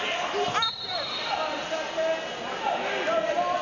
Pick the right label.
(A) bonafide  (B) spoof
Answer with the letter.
A